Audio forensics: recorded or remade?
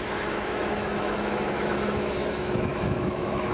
remade